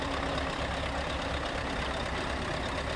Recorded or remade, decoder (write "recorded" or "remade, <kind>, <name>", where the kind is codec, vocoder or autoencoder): recorded